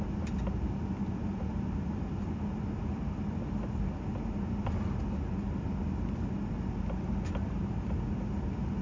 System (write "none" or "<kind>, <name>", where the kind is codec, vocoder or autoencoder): none